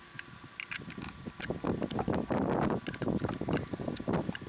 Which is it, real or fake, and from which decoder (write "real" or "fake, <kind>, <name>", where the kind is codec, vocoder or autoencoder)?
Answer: real